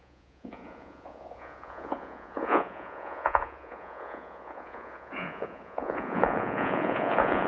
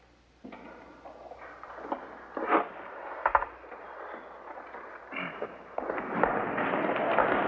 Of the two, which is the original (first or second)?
second